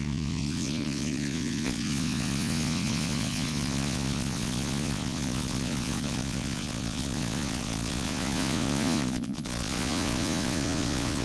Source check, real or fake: fake